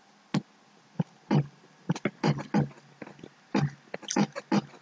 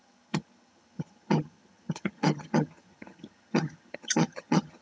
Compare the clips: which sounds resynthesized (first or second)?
second